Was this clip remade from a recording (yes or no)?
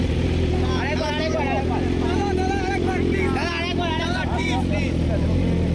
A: no